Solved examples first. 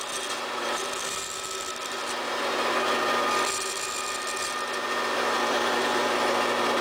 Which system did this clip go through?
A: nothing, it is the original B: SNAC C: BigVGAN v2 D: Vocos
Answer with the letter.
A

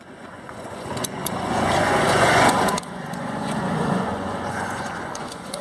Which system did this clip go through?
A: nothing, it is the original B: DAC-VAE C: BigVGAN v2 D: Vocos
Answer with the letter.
D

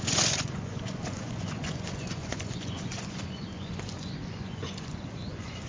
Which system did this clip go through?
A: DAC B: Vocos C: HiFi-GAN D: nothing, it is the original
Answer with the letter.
B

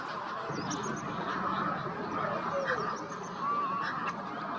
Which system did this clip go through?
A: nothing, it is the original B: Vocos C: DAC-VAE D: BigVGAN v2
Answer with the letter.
A